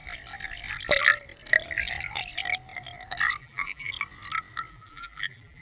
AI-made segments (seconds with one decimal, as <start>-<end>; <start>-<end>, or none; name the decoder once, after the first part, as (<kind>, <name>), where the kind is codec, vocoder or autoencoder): 3.4-3.9 (vocoder, BigVGAN v2); 4.7-5.6